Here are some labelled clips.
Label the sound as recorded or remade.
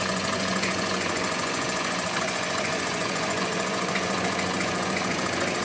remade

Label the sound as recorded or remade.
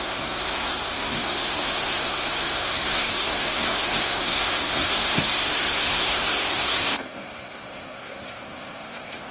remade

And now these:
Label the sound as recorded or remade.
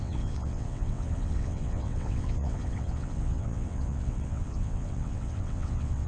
remade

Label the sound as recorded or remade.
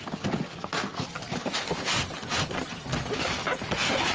recorded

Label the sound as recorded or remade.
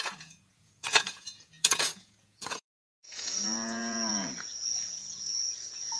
remade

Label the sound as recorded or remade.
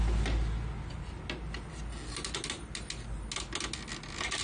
recorded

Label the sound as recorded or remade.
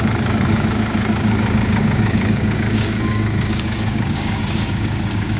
remade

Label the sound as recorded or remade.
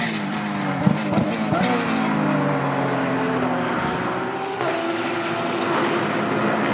recorded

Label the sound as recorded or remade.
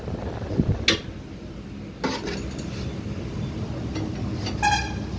recorded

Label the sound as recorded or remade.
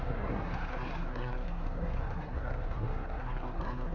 remade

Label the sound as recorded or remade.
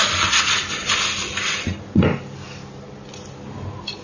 recorded